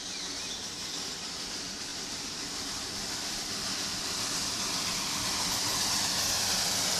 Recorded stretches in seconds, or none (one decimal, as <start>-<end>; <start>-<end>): 0.0-1.9; 4.6-7.0